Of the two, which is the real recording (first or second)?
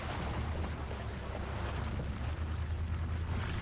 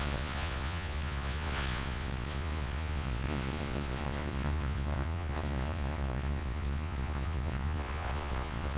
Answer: first